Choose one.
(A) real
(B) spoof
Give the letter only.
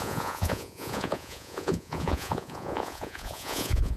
B